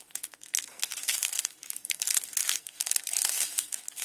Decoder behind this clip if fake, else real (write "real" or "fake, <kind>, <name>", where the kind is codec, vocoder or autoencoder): fake, codec, SNAC